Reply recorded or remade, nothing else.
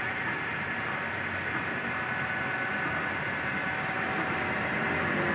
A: recorded